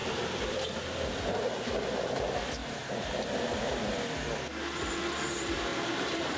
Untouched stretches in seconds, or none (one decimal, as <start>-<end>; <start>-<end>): 0.5-2.6; 3.9-5.7